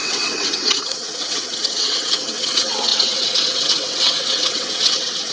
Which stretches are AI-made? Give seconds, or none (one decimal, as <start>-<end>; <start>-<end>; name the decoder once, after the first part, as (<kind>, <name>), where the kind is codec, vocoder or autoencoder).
0.0-5.3 (vocoder, WaveNeXt)